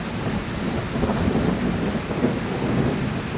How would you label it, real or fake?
real